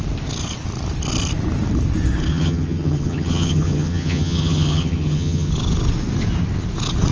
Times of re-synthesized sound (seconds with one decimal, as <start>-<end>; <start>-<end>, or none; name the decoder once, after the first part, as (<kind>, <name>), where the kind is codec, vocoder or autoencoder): 2.3-5.5 (vocoder, HiFi-GAN)